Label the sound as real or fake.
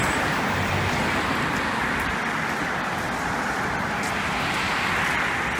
real